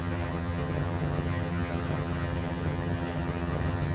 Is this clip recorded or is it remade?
remade